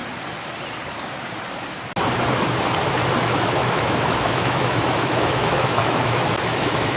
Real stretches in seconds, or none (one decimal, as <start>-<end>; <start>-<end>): 0.0-3.2